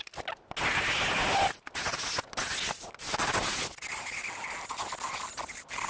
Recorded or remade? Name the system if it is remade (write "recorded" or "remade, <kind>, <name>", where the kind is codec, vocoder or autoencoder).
recorded